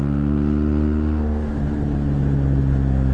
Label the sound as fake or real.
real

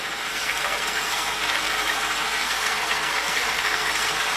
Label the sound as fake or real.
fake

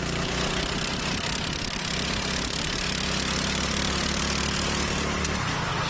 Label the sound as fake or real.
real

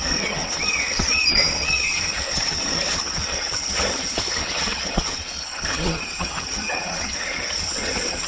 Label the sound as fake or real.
fake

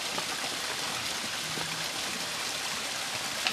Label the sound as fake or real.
real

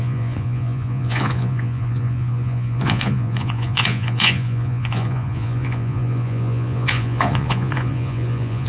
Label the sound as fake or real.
fake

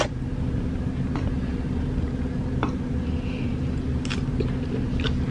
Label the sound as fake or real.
real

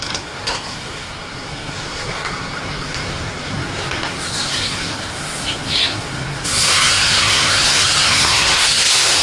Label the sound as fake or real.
fake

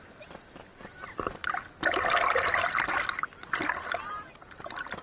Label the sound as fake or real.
real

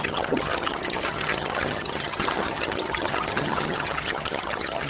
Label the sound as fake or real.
fake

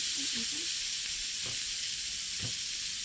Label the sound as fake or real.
real